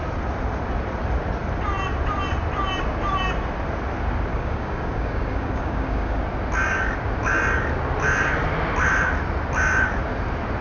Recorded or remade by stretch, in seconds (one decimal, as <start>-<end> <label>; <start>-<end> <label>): 0.0-4.3 recorded; 4.3-6.2 remade; 6.2-10.6 recorded